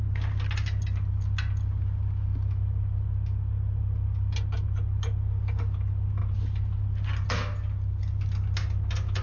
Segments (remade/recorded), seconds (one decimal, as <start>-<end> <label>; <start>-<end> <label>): 0.0-9.2 recorded

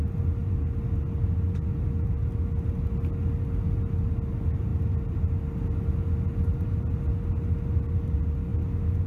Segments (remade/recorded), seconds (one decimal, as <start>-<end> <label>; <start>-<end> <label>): 0.0-9.1 recorded

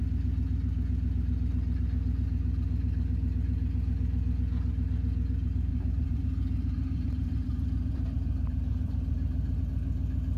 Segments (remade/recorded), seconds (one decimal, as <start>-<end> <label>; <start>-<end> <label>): 0.0-5.7 recorded; 5.7-9.6 remade; 9.6-10.4 recorded